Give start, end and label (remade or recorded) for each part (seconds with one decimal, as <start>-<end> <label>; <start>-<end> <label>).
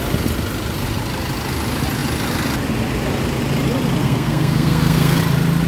0.0-4.0 recorded; 4.0-5.2 remade; 5.2-5.7 recorded